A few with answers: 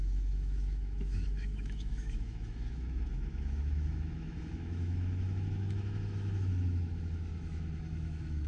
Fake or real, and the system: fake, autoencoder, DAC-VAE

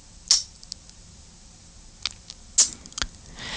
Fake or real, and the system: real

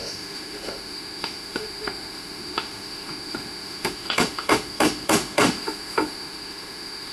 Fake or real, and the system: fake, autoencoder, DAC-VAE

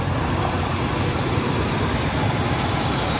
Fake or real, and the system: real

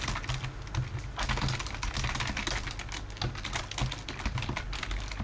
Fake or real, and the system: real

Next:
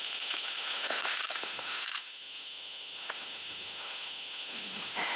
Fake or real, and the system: fake, autoencoder, DAC-VAE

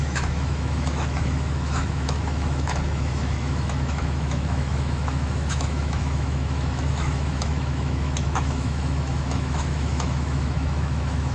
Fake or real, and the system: fake, autoencoder, DAC-VAE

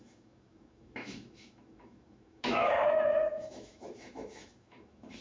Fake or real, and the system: fake, autoencoder, DAC-VAE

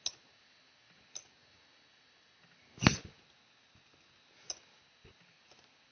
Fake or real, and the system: real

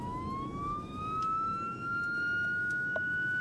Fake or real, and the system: fake, autoencoder, DAC-VAE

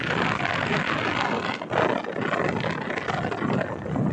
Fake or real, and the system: real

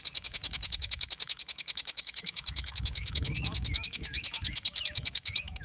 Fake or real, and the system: fake, autoencoder, DAC-VAE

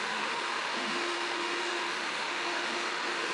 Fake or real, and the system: fake, autoencoder, DAC-VAE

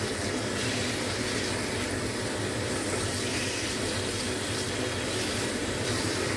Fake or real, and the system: real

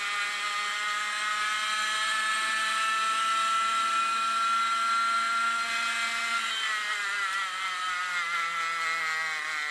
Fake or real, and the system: real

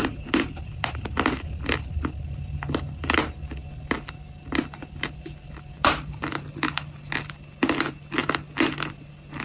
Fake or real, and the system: real